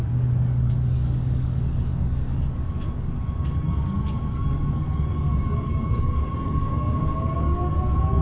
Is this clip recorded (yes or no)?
no